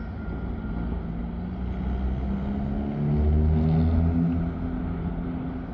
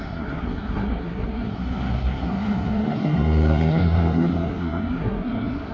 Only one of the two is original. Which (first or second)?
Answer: first